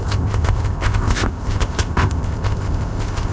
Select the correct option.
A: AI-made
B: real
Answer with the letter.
A